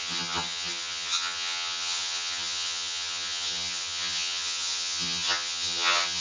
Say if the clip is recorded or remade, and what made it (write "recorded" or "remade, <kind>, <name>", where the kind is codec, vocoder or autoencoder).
remade, vocoder, HiFi-GAN